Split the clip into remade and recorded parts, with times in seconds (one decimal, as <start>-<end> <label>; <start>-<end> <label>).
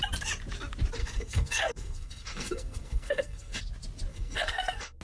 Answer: 0.0-1.0 recorded; 1.0-3.6 remade; 3.6-4.1 recorded; 4.1-5.0 remade